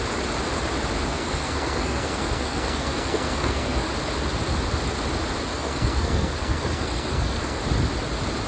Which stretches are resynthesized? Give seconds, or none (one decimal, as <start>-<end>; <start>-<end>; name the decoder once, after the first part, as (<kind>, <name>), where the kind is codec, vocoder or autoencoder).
1.1-3.9 (codec, SNAC); 5.5-7.6